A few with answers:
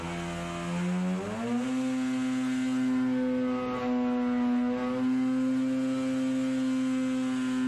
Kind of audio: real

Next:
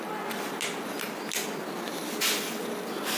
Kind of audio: real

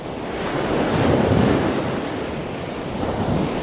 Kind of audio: real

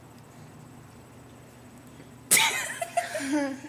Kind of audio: real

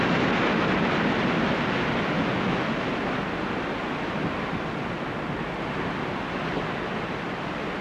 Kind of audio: real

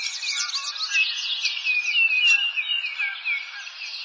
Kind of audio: real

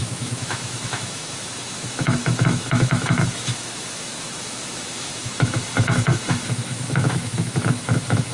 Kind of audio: fake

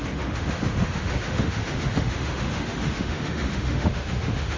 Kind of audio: fake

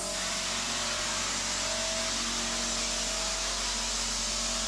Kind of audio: real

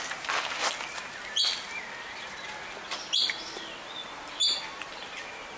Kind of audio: real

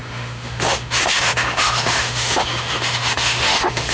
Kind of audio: fake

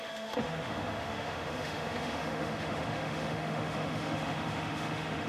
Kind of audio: fake